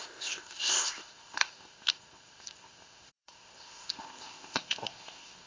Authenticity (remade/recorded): remade